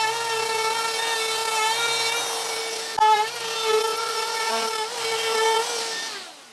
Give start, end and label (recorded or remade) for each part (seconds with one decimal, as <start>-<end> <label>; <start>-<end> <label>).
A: 0.0-3.9 recorded; 3.9-4.5 remade; 4.5-6.5 recorded